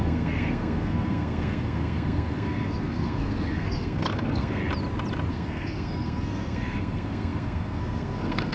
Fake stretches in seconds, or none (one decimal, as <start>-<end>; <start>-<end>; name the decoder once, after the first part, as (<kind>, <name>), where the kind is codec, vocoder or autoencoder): 0.0-4.6 (codec, SNAC); 5.3-8.5